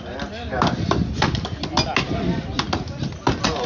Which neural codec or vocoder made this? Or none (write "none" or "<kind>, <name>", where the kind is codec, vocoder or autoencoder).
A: none